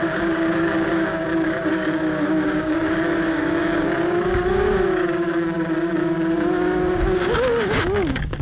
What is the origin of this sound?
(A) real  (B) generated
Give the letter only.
B